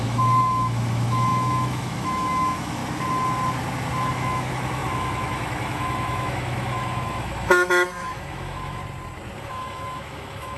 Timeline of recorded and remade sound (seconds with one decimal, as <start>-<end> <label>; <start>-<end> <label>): 0.0-2.8 remade; 2.8-4.1 recorded; 4.1-8.8 remade; 8.8-9.4 recorded; 9.4-10.6 remade